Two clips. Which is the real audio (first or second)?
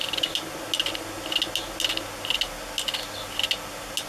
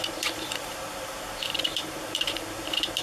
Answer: first